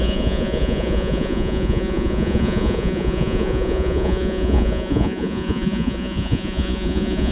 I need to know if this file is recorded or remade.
remade